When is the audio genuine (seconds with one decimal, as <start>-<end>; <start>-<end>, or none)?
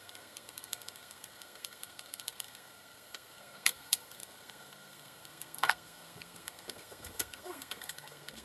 none